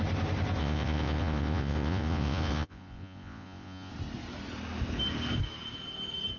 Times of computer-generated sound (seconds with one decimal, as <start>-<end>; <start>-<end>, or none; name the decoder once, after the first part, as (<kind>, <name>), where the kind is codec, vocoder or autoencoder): 0.6-3.9 (vocoder, Vocos)